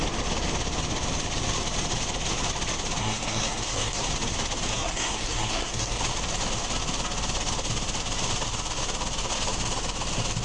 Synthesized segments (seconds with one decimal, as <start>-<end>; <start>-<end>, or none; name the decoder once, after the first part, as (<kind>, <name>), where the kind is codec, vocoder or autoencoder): 3.0-4.1 (codec, SNAC); 4.7-6.0